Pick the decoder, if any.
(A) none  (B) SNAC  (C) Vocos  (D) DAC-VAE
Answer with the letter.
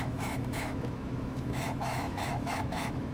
D